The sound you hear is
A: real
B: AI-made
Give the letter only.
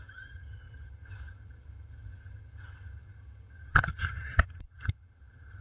B